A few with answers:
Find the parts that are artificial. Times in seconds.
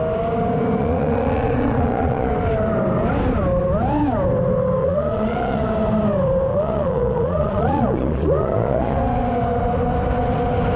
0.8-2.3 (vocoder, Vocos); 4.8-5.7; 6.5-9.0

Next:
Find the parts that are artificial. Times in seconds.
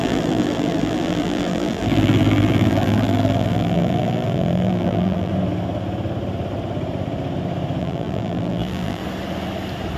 0.0-5.3 (vocoder, BigVGAN v2); 7.8-9.0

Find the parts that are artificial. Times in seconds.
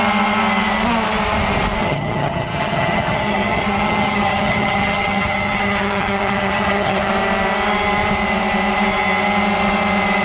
1.8-7.1 (vocoder, HiFi-GAN)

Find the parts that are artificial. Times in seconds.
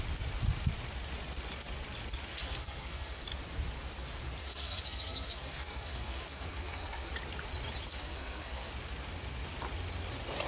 2.3-3.2 (codec, SNAC); 4.4-7.1; 7.9-8.7